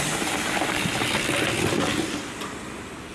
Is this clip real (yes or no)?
yes